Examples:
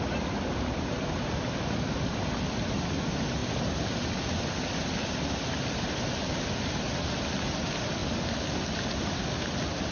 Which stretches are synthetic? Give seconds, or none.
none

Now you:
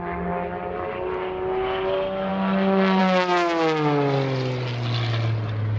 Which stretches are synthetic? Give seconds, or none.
none

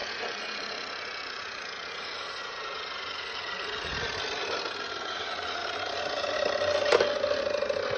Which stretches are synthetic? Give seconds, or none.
0.0-3.9; 5.0-5.6

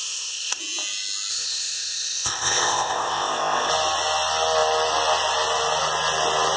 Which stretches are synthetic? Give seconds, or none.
0.0-0.6; 1.3-3.7